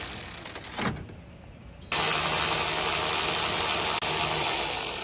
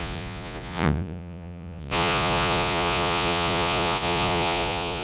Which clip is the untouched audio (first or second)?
first